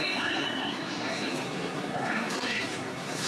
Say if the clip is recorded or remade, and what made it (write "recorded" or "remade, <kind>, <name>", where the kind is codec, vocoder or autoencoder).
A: remade, codec, SNAC